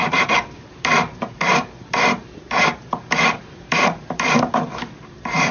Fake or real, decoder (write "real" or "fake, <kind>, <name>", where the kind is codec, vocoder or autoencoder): fake, vocoder, BigVGAN v2